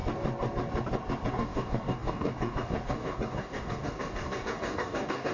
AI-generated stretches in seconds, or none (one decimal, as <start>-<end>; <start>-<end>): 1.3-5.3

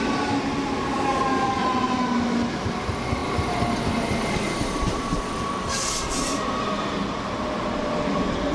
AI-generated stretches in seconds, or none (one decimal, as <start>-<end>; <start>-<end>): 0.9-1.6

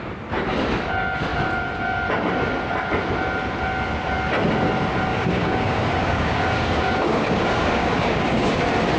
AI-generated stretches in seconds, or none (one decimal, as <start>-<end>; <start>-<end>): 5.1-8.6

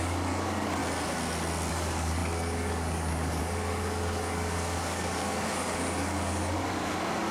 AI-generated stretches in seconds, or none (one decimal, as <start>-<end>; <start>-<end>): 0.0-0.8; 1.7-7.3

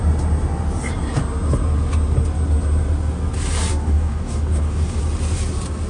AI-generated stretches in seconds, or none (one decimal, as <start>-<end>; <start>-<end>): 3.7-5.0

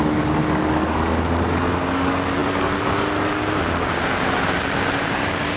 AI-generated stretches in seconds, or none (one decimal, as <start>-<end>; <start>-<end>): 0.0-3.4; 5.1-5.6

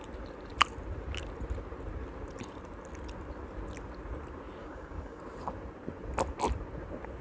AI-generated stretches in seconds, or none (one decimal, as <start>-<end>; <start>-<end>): 4.6-5.2

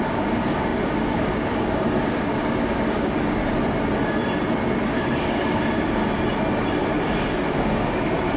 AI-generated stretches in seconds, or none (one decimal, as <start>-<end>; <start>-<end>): 0.0-3.4; 4.8-6.0; 6.9-8.4